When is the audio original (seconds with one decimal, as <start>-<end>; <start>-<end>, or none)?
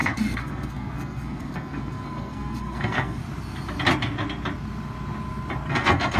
3.2-5.7